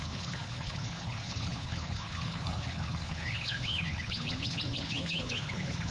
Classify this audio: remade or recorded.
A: remade